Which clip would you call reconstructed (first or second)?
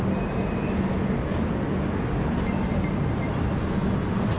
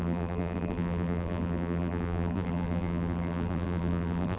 second